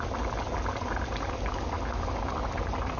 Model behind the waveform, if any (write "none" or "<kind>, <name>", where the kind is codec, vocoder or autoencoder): none